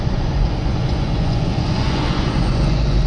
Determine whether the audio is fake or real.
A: fake